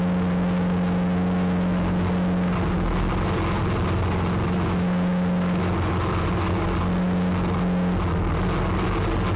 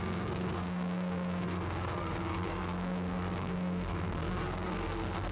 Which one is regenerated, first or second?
second